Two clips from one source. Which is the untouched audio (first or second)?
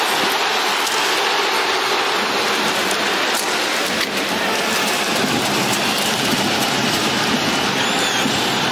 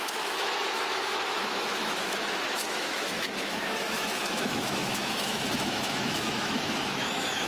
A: first